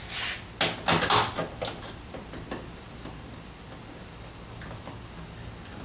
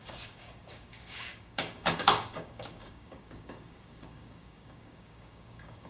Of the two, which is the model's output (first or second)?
second